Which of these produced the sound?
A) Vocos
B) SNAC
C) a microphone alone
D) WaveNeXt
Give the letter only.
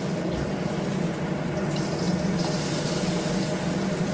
C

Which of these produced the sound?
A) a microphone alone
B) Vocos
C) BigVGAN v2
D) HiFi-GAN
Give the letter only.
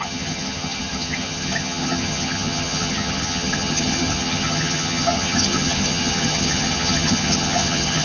D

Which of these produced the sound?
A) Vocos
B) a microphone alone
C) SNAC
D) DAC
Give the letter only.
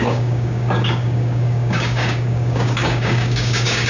D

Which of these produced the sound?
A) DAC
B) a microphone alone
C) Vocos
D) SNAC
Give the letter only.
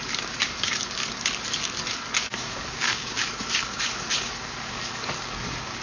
A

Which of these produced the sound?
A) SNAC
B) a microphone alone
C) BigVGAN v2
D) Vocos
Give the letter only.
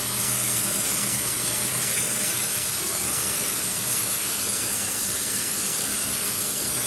A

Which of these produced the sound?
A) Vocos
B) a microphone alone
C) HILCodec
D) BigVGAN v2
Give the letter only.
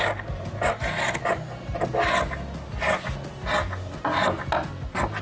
B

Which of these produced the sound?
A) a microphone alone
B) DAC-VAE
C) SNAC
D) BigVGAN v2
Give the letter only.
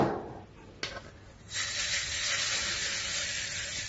A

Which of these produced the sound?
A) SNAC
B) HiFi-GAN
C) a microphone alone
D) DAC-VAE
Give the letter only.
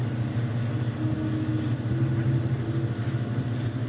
C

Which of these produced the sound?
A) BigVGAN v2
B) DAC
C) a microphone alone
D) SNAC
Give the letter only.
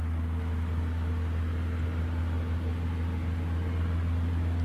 C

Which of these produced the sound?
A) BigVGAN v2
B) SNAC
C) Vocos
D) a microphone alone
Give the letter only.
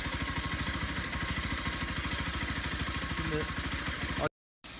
D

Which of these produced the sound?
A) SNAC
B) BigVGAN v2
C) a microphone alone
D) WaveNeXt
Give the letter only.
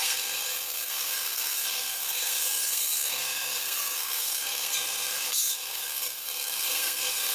A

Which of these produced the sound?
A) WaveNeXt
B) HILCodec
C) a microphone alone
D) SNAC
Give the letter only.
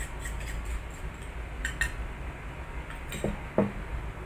C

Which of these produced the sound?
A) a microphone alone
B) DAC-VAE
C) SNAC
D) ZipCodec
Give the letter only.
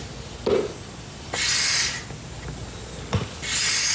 A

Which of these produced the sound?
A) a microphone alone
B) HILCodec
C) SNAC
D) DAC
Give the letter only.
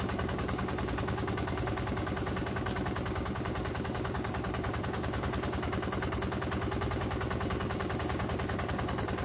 D